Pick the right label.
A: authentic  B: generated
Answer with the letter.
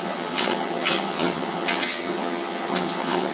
B